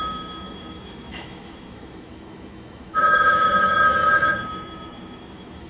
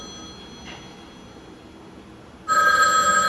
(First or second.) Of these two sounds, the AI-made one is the first